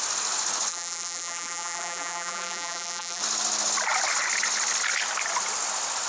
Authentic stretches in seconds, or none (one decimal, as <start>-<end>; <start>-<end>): 0.0-0.7; 3.2-6.1